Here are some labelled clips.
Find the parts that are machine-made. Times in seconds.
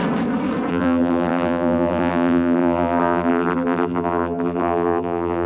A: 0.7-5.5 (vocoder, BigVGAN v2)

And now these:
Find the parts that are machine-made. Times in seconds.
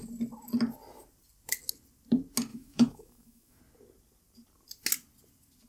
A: 2.5-3.6 (autoencoder, DAC-VAE)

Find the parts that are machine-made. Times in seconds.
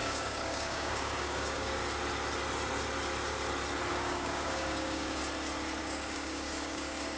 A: 0.0-1.8 (codec, DAC); 3.9-5.2; 5.8-7.2